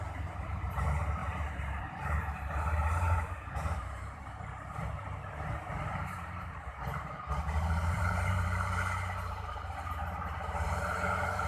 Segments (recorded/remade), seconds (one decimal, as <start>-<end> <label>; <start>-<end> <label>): 0.0-11.5 remade